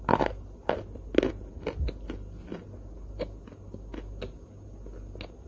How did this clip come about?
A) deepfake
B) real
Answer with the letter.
B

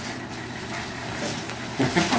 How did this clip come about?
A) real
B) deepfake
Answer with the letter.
A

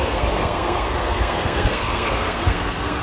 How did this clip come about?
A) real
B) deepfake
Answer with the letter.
B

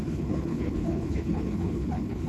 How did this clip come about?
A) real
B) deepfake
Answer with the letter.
B